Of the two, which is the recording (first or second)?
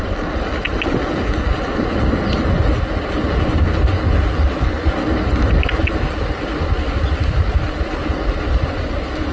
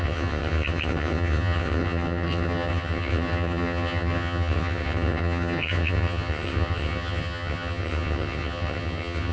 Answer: first